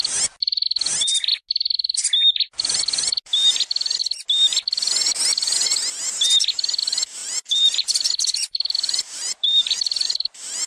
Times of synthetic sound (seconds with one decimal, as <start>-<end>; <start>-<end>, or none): 7.2-10.7